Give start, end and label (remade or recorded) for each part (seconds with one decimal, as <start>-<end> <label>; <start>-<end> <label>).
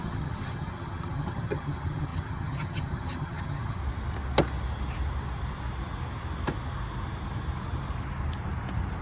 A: 0.0-3.8 remade; 3.8-9.0 recorded